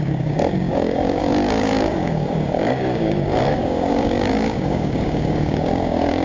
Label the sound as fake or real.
fake